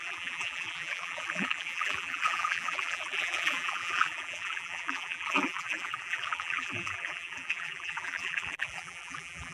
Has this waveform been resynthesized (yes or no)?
yes